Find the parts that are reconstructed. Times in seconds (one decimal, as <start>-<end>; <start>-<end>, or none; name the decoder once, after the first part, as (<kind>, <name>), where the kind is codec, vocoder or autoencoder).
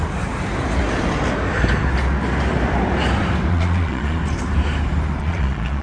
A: 3.5-4.2 (vocoder, Vocos); 5.2-5.8